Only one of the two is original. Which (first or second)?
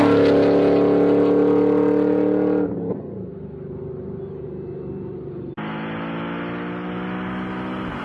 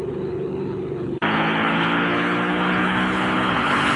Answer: first